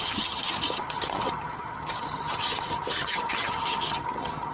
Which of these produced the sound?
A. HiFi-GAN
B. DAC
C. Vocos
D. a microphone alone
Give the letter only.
A